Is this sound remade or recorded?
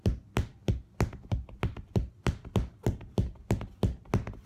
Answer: recorded